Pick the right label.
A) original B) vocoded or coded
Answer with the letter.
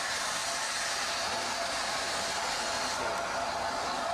A